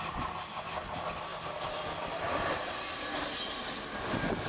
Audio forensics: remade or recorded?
recorded